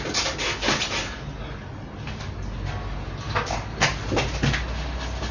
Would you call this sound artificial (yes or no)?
no